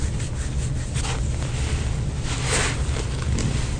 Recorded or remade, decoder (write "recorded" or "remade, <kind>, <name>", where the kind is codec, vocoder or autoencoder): recorded